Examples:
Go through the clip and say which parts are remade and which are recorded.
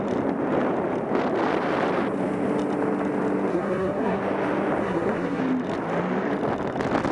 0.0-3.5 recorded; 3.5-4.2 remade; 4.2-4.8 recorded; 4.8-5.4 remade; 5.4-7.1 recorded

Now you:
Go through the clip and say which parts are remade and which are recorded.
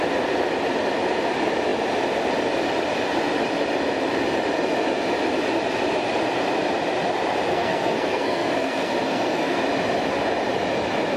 0.0-7.5 recorded; 7.5-9.6 remade; 9.6-11.2 recorded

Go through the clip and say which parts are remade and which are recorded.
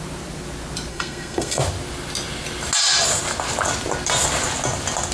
0.0-0.9 recorded; 0.9-1.6 remade; 1.6-5.1 recorded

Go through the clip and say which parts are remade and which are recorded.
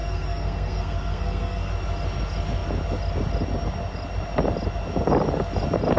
0.0-1.7 remade; 1.7-6.0 recorded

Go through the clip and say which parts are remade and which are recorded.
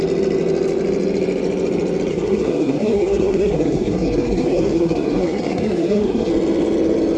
0.0-2.1 recorded; 2.1-6.3 remade; 6.3-7.2 recorded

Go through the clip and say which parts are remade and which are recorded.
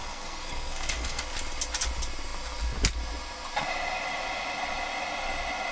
0.0-1.2 remade; 1.2-5.7 recorded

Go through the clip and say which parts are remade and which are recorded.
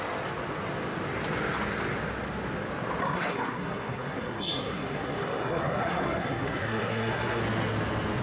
0.0-3.0 recorded; 3.0-7.4 remade; 7.4-8.2 recorded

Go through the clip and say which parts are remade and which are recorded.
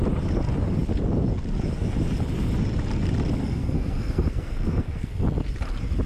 0.0-3.4 recorded; 3.4-5.1 remade; 5.1-6.1 recorded